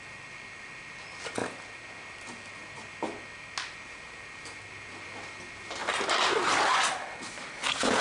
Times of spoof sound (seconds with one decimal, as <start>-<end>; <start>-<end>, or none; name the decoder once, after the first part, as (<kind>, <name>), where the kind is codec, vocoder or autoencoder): none